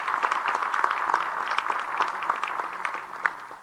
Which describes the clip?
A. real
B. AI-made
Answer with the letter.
A